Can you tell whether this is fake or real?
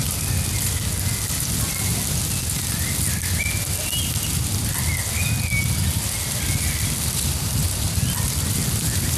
real